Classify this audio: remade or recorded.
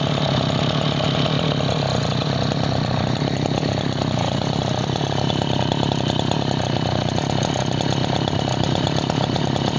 recorded